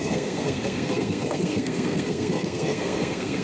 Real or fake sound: fake